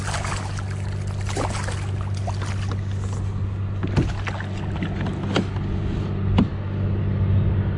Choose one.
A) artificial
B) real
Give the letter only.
B